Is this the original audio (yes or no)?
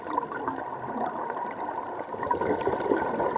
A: yes